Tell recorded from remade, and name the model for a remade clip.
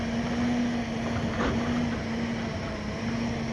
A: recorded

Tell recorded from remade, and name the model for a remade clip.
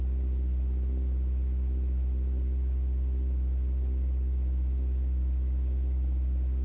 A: recorded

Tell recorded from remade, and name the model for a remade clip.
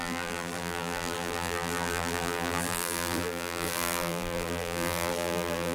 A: remade, vocoder, BigVGAN v2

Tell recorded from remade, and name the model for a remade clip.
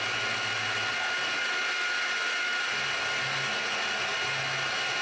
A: recorded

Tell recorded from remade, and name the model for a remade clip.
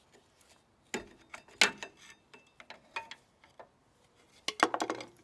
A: recorded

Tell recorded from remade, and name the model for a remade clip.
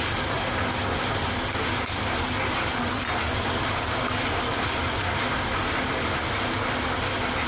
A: recorded